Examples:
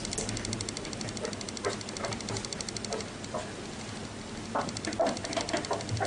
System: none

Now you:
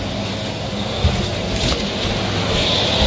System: none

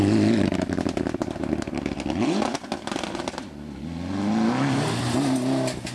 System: none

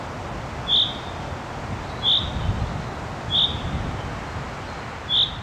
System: none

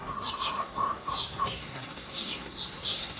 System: codec, SNAC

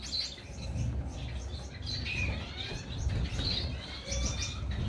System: vocoder, BigVGAN v2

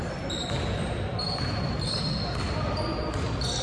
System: none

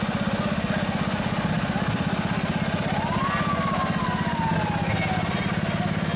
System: none